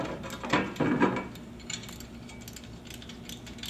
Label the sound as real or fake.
real